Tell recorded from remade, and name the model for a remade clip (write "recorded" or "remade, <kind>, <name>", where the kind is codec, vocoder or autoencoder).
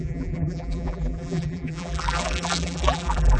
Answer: remade, vocoder, BigVGAN v2